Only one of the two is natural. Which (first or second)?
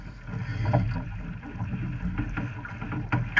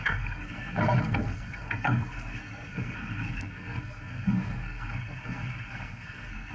first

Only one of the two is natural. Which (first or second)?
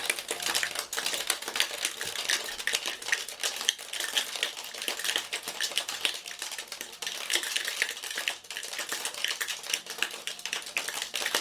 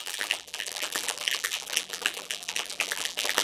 first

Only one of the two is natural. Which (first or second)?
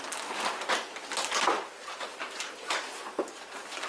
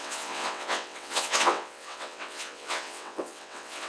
first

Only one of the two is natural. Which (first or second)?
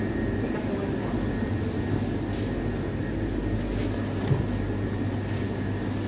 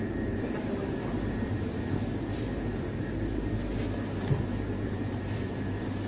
first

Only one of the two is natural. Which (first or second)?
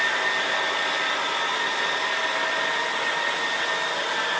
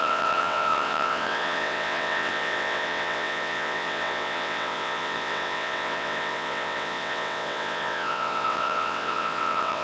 first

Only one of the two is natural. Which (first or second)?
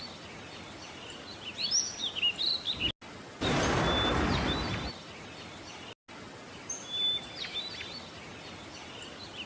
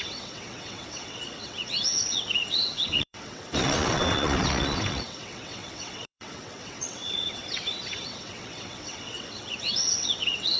first